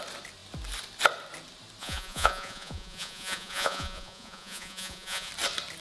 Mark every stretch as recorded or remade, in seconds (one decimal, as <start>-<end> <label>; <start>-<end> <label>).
0.0-1.8 recorded; 1.8-5.3 remade; 5.3-5.8 recorded